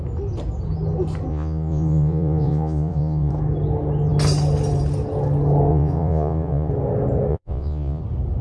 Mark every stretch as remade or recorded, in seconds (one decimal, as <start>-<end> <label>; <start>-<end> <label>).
0.0-1.3 recorded; 1.3-3.3 remade; 3.3-5.7 recorded; 5.7-6.7 remade; 6.7-7.3 recorded; 7.3-8.0 remade; 8.0-8.4 recorded